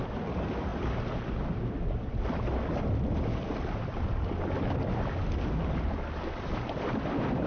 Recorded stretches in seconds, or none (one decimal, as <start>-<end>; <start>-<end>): 0.0-7.5